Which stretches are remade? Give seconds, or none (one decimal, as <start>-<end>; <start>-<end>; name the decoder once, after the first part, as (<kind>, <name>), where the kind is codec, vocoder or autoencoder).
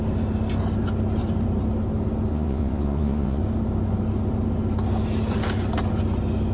2.3-3.4 (vocoder, Vocos)